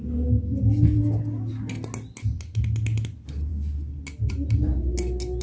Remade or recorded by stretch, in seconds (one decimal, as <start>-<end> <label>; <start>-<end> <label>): 0.0-5.4 recorded